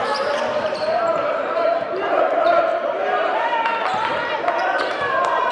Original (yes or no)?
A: no